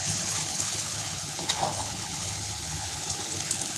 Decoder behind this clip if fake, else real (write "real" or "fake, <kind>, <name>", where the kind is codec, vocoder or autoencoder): fake, codec, HILCodec